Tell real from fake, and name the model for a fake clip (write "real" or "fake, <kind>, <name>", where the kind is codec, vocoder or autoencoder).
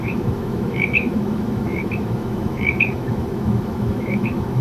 fake, autoencoder, DAC-VAE